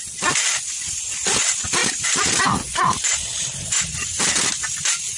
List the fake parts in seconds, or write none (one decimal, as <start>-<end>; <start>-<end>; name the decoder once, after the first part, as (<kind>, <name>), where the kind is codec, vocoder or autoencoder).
1.8-2.4 (vocoder, BigVGAN v2)